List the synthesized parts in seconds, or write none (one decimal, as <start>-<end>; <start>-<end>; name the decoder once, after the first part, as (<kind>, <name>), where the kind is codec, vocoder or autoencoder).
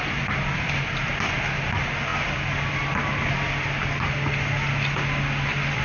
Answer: none